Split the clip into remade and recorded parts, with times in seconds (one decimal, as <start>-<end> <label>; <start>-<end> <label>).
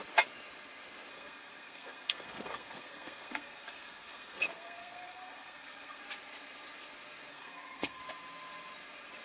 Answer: 0.0-1.1 recorded; 1.1-6.0 remade; 6.0-7.3 recorded; 7.3-8.0 remade; 8.0-9.2 recorded